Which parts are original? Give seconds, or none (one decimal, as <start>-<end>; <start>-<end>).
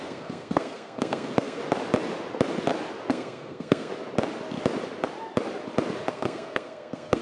1.6-3.1; 3.9-6.1